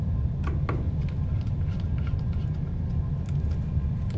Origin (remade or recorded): recorded